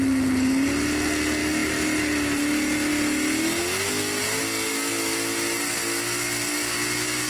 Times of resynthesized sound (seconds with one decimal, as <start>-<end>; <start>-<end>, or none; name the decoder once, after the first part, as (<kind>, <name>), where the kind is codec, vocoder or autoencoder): none